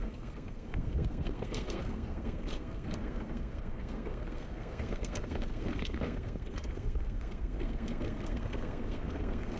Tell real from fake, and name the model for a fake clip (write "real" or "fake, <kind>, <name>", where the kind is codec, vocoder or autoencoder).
fake, codec, SNAC